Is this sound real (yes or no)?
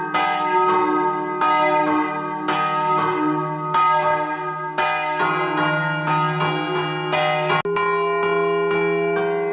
yes